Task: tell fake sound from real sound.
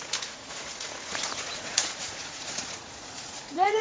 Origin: fake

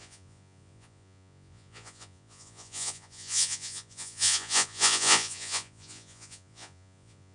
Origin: fake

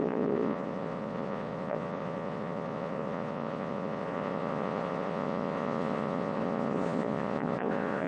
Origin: fake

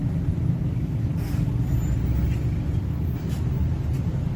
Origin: real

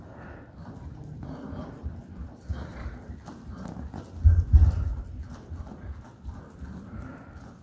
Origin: real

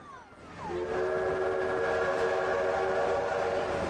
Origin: real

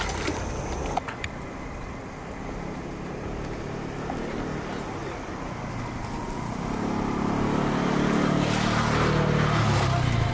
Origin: real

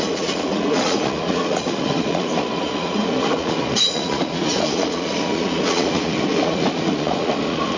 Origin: fake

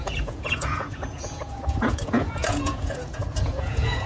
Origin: fake